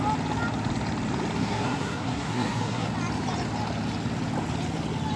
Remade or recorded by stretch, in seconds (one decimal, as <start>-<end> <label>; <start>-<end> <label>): 0.0-1.4 recorded; 1.4-2.9 remade; 2.9-5.2 recorded